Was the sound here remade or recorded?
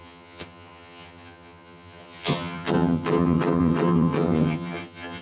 remade